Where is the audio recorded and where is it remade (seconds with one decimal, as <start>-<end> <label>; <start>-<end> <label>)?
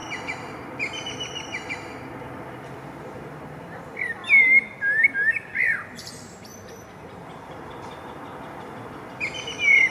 0.0-4.2 remade; 4.2-6.1 recorded; 6.1-6.5 remade; 6.5-7.7 recorded; 7.7-9.9 remade